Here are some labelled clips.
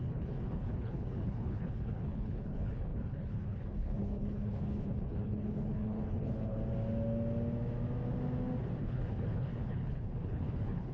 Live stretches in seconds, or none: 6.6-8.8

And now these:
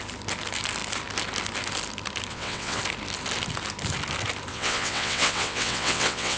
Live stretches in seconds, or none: 0.0-2.3; 2.8-4.5

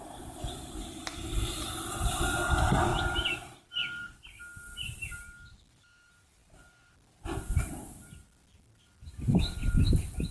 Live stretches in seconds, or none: 0.0-1.3; 2.1-2.9; 4.4-10.3

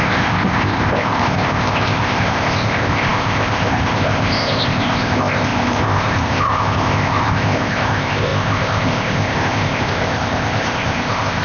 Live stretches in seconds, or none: none

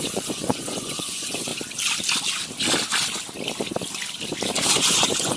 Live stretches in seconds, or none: 1.5-4.7